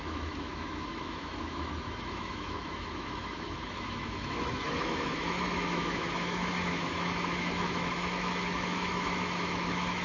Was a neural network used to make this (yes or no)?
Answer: yes